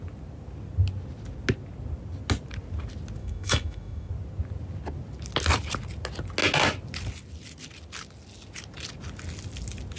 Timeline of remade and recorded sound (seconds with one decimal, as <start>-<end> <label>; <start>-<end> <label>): 0.0-3.2 recorded; 3.2-4.1 remade; 4.1-10.0 recorded

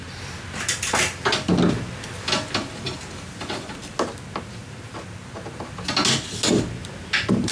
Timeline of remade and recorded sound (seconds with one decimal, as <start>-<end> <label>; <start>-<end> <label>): 0.0-7.5 recorded

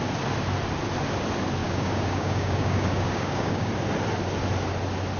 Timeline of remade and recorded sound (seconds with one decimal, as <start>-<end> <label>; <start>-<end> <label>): 0.0-1.6 recorded; 1.6-3.7 remade; 3.7-5.2 recorded

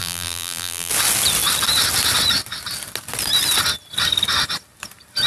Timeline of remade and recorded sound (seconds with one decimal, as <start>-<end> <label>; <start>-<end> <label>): 0.0-0.9 remade; 0.9-5.3 recorded

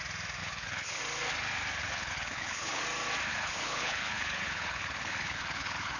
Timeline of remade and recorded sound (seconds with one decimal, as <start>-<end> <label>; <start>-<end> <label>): 0.0-0.4 recorded; 0.4-1.0 remade; 1.0-1.8 recorded; 1.8-2.8 remade; 2.8-3.3 recorded; 3.3-6.0 remade

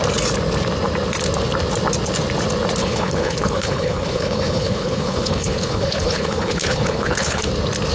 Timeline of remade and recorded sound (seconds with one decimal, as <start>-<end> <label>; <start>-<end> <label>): 0.0-2.8 recorded; 2.8-7.5 remade; 7.5-7.9 recorded

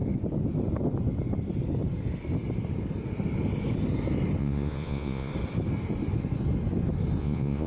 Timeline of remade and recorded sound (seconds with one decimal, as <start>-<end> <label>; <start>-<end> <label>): 0.0-4.4 recorded; 4.4-5.3 remade; 5.3-7.2 recorded; 7.2-7.7 remade

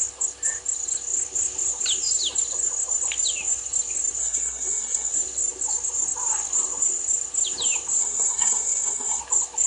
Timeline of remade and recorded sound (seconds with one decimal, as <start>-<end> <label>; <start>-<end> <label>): 0.0-4.2 recorded; 4.2-5.1 remade; 5.1-8.0 recorded; 8.0-9.2 remade; 9.2-9.7 recorded